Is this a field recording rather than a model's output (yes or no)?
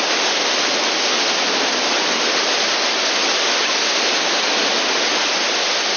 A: yes